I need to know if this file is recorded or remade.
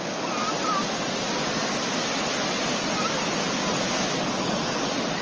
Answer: recorded